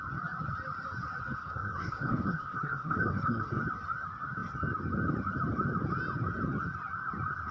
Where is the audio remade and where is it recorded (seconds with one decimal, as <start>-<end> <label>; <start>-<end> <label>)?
0.0-1.4 recorded; 1.4-3.6 remade; 3.6-7.5 recorded